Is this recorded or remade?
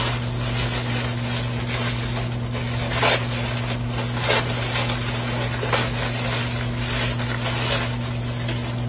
recorded